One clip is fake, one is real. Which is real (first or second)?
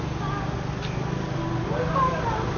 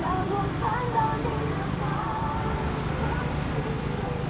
first